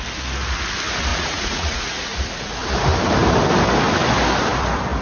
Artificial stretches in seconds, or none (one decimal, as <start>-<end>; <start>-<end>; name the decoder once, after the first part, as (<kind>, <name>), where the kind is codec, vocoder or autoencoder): 1.1-2.3 (vocoder, Vocos)